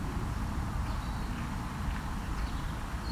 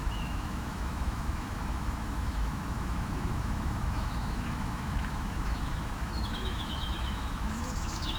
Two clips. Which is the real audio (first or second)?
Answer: first